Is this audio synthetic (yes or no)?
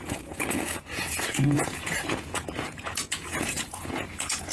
yes